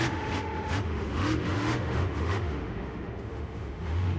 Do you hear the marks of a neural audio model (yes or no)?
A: yes